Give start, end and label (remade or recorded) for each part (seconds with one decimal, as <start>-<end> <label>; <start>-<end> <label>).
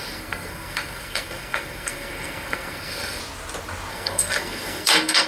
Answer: 0.0-3.2 remade; 3.2-3.9 recorded; 3.9-5.3 remade